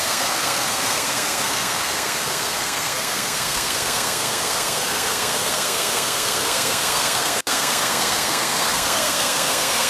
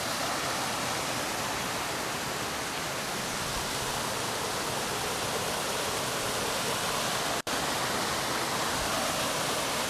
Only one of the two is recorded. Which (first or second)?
second